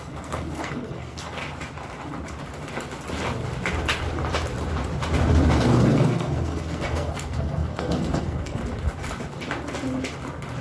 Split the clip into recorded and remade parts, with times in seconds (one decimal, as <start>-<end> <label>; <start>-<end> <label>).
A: 0.0-1.4 remade; 1.4-5.5 recorded; 5.5-8.6 remade; 8.6-10.6 recorded